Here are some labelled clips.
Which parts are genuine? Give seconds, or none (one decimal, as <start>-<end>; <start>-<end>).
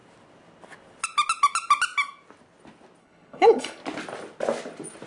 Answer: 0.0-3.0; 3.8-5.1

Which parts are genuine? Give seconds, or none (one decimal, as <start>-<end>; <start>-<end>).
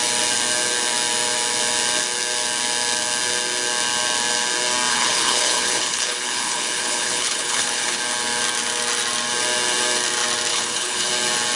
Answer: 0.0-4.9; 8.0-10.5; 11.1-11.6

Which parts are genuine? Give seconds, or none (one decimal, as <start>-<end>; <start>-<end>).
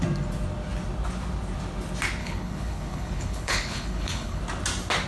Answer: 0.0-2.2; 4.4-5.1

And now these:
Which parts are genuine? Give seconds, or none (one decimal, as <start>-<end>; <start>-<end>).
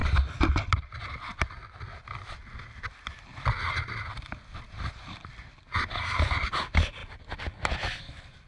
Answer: 0.0-8.5